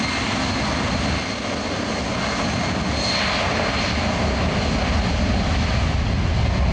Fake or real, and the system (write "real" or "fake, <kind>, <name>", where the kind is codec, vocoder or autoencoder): real